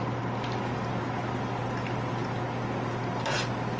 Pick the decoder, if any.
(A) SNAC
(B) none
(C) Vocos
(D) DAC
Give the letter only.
B